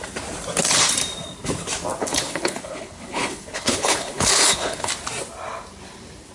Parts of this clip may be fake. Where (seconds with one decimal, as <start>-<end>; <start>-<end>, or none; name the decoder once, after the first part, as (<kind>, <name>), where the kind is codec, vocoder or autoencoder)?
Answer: 2.0-4.9 (codec, HILCodec)